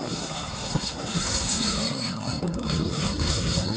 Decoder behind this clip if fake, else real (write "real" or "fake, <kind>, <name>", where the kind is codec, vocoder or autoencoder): fake, codec, SNAC